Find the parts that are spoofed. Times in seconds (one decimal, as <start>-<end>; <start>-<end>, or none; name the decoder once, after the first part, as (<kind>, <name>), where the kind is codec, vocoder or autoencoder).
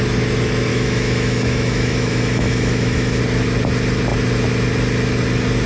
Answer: 0.7-3.2 (autoencoder, DAC-VAE)